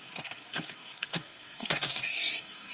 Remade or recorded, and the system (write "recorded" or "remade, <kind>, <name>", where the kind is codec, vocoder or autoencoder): remade, codec, SNAC